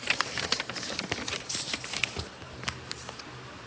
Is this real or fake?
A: real